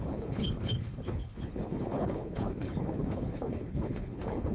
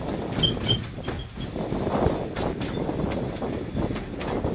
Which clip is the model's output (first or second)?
first